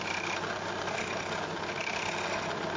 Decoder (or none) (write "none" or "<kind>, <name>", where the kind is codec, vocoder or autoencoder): none